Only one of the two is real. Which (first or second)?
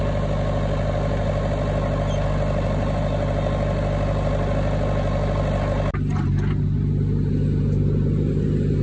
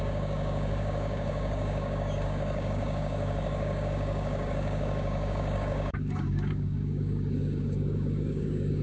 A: first